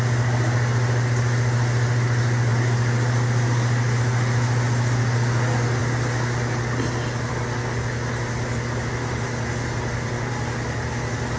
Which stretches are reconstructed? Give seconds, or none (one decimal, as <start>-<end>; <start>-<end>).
none